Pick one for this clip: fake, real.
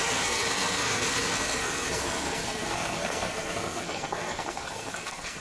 fake